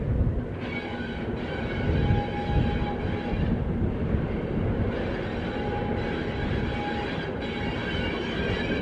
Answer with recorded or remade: recorded